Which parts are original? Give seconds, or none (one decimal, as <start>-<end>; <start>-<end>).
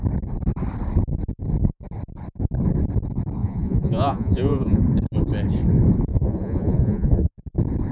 0.0-3.4; 4.8-6.1; 7.3-7.9